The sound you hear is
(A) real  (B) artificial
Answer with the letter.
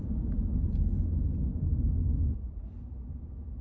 A